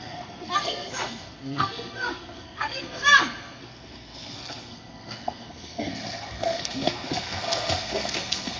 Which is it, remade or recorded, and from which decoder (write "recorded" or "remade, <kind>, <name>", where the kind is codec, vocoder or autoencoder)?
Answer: remade, codec, SNAC